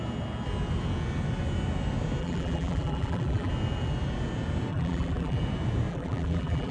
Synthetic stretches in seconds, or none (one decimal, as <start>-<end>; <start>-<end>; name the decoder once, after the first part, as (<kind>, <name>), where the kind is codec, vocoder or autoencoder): 2.2-3.5 (vocoder, BigVGAN v2); 4.7-5.4; 5.9-6.7